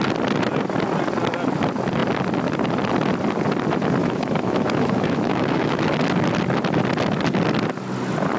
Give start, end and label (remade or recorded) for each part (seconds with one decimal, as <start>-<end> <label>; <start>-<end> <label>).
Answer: 0.0-4.0 recorded; 4.0-5.8 remade; 5.8-8.4 recorded